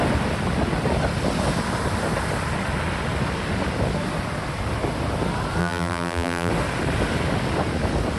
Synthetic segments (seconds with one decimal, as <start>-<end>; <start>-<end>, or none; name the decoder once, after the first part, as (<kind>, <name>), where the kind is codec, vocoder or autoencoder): 5.6-6.5 (vocoder, BigVGAN v2)